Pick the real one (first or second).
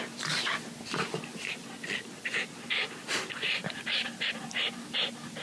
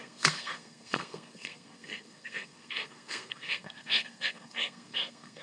first